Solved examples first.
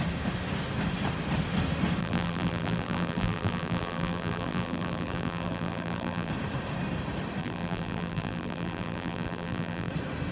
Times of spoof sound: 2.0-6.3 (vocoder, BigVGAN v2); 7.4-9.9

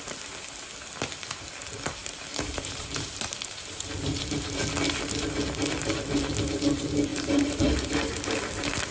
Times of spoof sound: 2.0-3.8 (vocoder, BigVGAN v2); 7.1-8.3

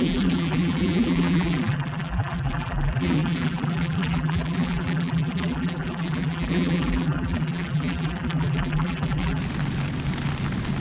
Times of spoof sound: 0.0-9.4 (vocoder, BigVGAN v2)

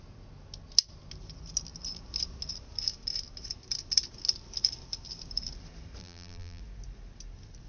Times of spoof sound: 6.0-6.6 (vocoder, BigVGAN v2)

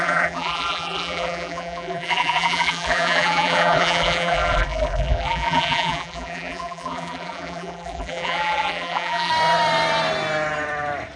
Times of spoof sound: 0.0-9.3 (vocoder, BigVGAN v2)

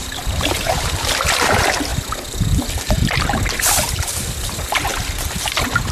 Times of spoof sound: 0.0-0.6 (vocoder, BigVGAN v2)

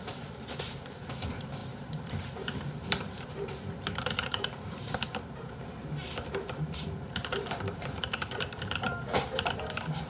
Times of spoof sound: 0.0-10.1 (vocoder, BigVGAN v2)